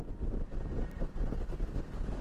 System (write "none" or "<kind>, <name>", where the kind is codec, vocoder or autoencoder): none